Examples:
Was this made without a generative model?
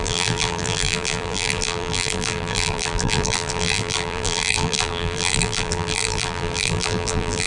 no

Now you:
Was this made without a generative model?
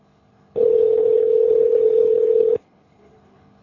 no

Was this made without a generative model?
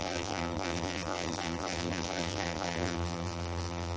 no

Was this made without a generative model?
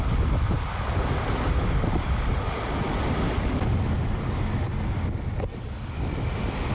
yes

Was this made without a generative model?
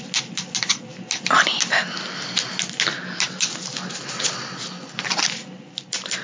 yes